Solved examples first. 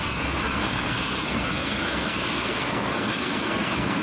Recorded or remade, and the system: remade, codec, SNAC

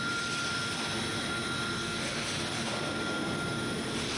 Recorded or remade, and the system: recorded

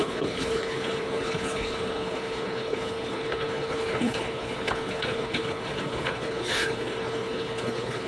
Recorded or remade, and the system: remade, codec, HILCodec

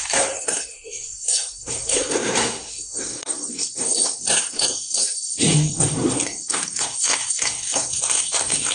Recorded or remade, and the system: remade, codec, SNAC